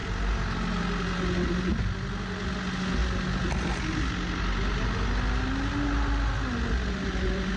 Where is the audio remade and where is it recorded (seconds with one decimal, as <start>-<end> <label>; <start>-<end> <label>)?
0.0-7.6 recorded